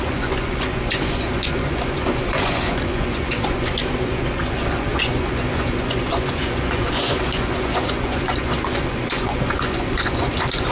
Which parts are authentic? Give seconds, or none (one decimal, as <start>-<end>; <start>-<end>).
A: none